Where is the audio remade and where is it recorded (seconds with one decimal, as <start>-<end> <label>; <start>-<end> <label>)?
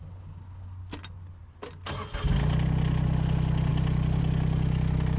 0.0-5.2 recorded